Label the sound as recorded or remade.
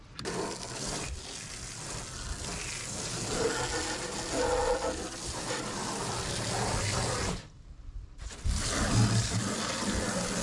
recorded